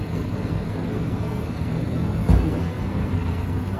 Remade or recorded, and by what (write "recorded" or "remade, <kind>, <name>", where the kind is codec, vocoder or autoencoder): remade, codec, SNAC